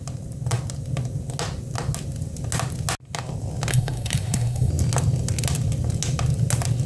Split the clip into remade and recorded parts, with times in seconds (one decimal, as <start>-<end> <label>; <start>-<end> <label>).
0.0-3.7 recorded; 3.7-4.7 remade; 4.7-6.9 recorded